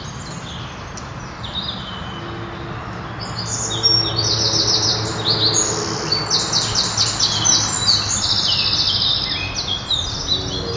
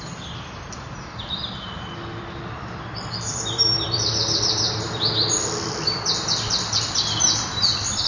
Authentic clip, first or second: first